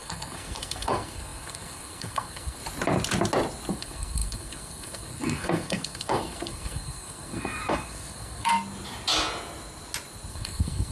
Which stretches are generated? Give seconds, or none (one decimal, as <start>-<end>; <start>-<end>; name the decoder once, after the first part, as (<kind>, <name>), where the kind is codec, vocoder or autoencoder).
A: 0.0-2.6 (codec, SNAC); 3.7-8.5; 10.3-10.9